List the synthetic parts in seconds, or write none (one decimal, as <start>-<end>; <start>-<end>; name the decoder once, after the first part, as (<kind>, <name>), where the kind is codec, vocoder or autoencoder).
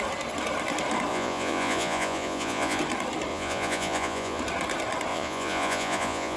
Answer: 1.1-2.8 (vocoder, Vocos); 3.3-4.4; 5.1-6.4